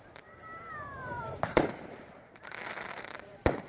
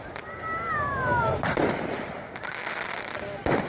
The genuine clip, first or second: second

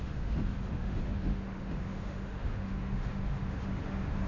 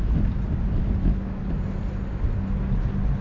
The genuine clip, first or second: second